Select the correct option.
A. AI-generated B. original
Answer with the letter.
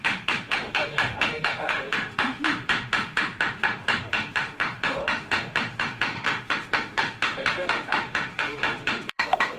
A